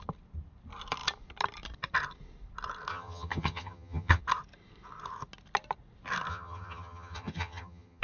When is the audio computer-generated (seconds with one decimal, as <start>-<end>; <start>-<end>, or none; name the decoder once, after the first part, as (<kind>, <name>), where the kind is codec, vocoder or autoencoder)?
2.9-4.2 (vocoder, HiFi-GAN); 6.3-8.0